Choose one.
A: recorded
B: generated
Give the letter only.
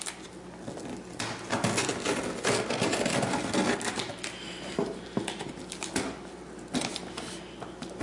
A